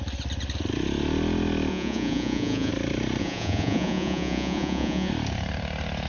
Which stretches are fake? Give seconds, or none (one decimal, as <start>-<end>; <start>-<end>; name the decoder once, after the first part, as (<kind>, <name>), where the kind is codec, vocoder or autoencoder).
1.7-2.7 (vocoder, Vocos); 3.2-5.1